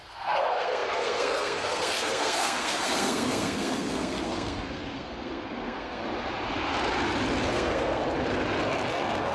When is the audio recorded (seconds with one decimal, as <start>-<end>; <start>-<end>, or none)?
6.0-7.5; 8.0-8.9